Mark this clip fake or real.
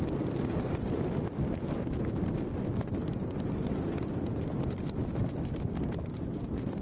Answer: real